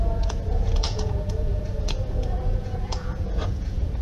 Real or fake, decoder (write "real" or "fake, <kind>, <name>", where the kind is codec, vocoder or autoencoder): fake, vocoder, Vocos